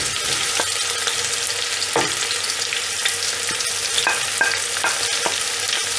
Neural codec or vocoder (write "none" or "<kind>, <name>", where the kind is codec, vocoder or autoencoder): none